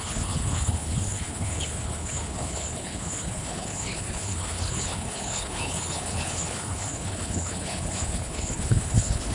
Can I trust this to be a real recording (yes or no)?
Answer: no